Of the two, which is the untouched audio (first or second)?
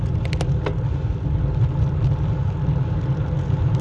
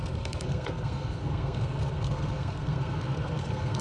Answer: first